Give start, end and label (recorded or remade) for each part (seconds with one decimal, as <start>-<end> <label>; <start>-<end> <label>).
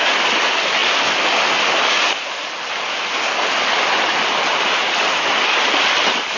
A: 0.0-6.4 recorded